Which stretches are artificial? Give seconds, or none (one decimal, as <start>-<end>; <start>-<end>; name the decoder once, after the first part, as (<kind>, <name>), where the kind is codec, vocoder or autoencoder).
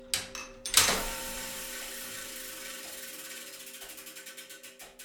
0.4-3.4 (vocoder, BigVGAN v2)